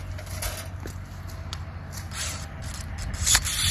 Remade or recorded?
recorded